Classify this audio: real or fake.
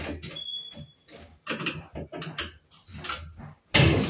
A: real